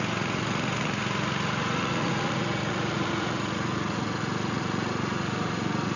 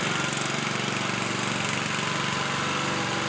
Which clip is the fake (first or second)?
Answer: first